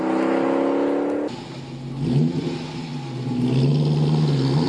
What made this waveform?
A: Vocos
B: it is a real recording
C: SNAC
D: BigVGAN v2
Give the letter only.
B